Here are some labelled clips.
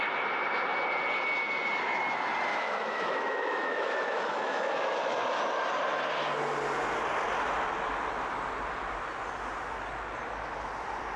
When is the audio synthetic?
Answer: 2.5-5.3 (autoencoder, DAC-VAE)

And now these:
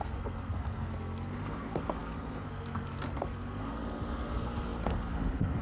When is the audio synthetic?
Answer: 0.0-5.6 (codec, SNAC)